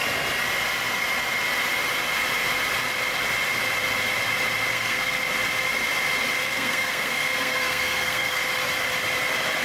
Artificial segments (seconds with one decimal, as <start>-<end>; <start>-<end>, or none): 4.7-5.2; 6.4-8.4